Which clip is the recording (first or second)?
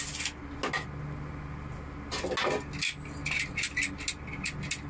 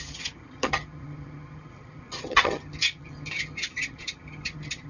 first